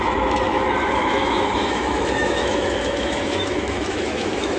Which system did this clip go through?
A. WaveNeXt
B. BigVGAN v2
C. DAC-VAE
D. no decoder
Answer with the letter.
C